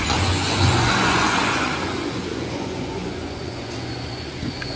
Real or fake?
fake